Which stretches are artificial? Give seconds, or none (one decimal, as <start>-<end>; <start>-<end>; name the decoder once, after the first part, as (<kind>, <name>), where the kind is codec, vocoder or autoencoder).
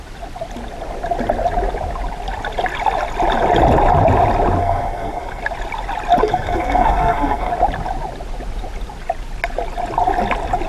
4.6-5.4 (codec, SNAC); 6.2-7.5